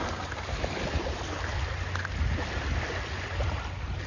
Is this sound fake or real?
real